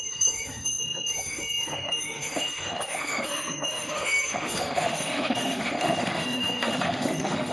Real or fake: fake